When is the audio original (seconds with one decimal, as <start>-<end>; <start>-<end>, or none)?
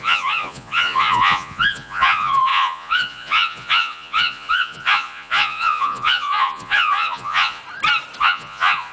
7.6-8.2